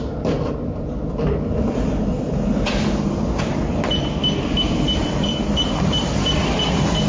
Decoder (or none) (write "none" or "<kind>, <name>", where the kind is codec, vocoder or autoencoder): vocoder, BigVGAN v2